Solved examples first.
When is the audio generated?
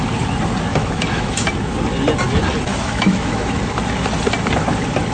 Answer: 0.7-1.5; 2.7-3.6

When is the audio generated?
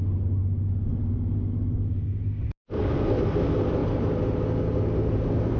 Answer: none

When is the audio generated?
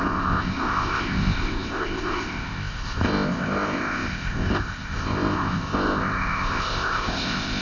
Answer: 0.0-7.6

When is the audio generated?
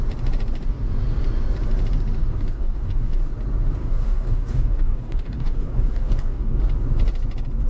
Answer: 2.2-3.2; 3.8-6.6